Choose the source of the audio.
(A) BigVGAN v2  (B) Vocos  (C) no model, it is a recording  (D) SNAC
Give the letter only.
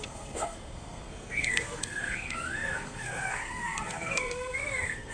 D